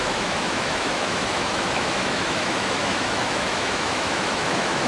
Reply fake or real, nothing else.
fake